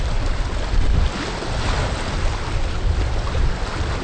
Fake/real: real